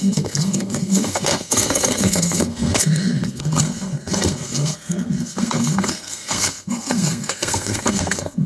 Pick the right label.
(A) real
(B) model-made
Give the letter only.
B